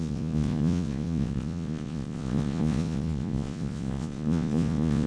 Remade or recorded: remade